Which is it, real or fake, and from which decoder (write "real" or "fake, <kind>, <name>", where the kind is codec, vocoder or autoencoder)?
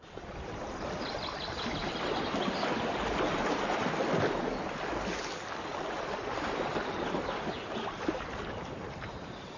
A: fake, vocoder, BigVGAN v2